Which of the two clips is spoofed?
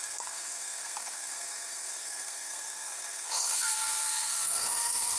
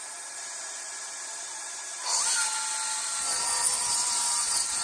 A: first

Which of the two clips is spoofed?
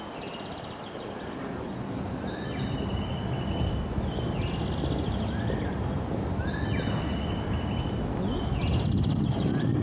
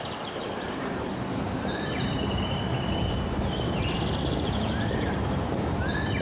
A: second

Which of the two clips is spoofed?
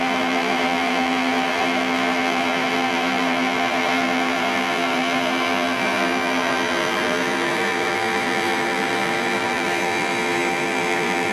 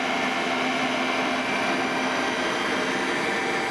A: first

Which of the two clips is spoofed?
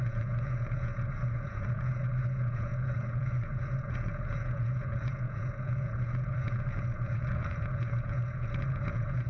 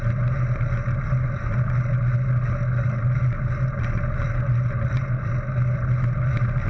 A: first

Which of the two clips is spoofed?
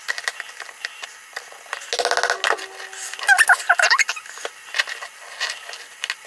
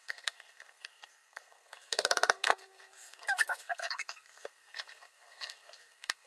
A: second